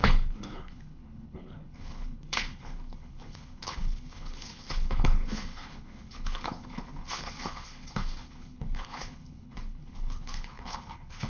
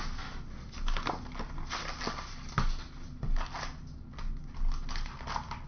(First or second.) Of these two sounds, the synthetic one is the first